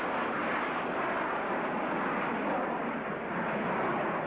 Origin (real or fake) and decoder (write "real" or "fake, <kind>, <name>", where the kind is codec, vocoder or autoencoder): real